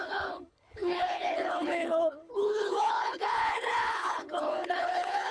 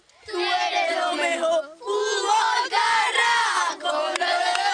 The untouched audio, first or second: second